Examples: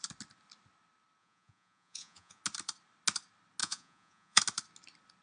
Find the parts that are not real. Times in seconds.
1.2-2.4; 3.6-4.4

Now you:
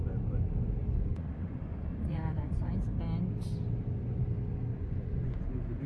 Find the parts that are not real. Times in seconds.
0.8-2.7; 4.7-5.5

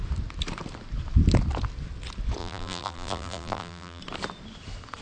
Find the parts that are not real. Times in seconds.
2.4-4.0

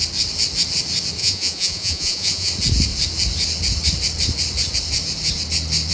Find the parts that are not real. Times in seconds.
1.2-2.5

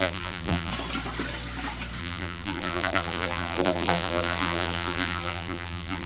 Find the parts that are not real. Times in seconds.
0.0-0.7; 2.0-6.1

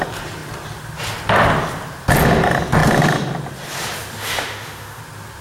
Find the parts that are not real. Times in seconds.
4.2-5.0

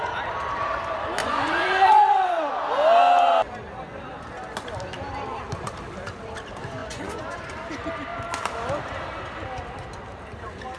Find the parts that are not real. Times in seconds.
1.2-2.5; 6.8-7.4

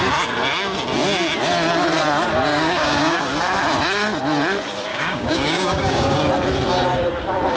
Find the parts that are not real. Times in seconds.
2.5-3.2; 4.9-6.3